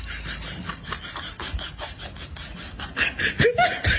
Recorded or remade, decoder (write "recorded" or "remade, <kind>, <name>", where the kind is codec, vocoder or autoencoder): recorded